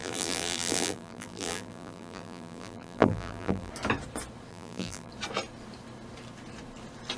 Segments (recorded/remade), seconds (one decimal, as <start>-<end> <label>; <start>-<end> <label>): 0.0-3.7 remade; 3.7-4.5 recorded; 4.5-5.1 remade; 5.1-7.2 recorded